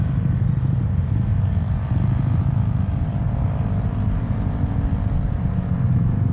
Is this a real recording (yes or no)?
yes